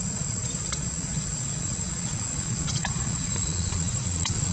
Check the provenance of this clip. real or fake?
fake